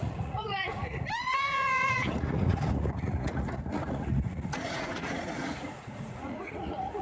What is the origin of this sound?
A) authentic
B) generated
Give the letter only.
B